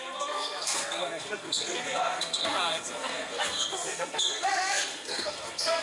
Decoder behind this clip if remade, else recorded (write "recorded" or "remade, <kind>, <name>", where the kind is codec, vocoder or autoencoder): remade, codec, SNAC